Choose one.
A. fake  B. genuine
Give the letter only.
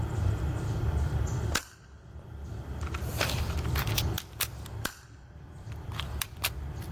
A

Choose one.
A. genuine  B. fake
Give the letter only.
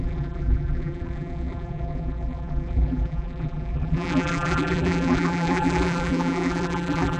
B